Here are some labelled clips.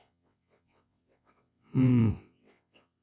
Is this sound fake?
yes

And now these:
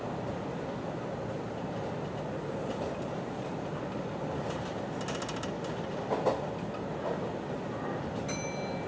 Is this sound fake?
no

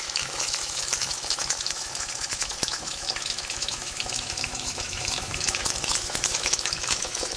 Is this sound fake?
yes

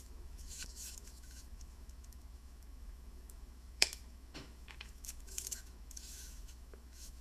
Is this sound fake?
yes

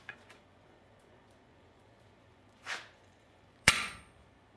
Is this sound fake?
yes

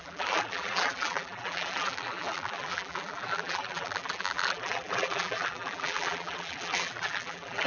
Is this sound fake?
yes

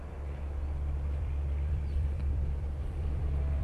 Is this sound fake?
yes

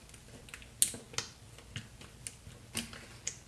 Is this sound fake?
no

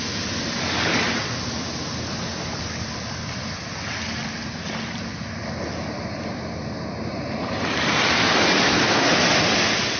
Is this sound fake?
no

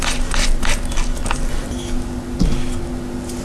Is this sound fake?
no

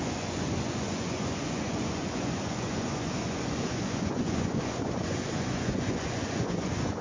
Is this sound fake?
yes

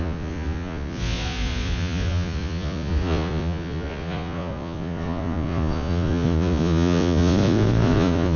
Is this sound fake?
yes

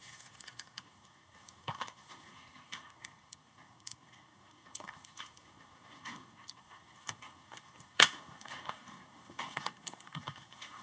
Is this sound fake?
yes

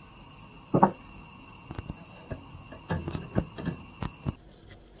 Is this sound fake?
no